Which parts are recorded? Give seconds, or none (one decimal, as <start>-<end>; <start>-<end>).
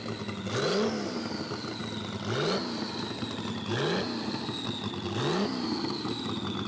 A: 0.0-6.7